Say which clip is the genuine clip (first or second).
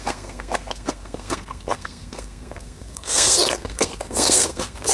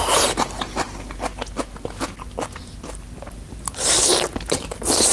second